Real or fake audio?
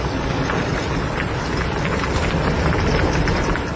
fake